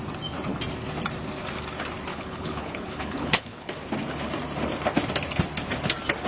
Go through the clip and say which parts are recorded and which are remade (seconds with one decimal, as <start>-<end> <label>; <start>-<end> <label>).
0.0-2.1 recorded; 2.1-3.7 remade; 3.7-6.3 recorded

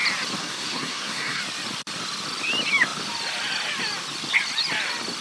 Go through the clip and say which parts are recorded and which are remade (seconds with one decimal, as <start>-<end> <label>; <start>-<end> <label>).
0.0-0.4 recorded; 0.4-1.4 remade; 1.4-5.2 recorded

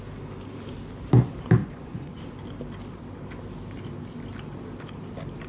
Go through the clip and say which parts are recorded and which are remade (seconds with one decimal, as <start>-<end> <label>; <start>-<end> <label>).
0.0-1.6 recorded; 1.6-2.2 remade; 2.2-5.5 recorded

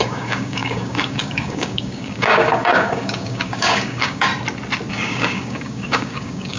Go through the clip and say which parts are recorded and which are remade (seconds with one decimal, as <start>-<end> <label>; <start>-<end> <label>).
0.0-4.3 remade; 4.3-4.9 recorded; 4.9-6.6 remade